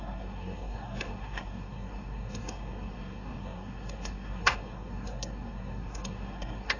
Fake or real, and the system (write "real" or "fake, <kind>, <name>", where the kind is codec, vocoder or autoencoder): fake, codec, SNAC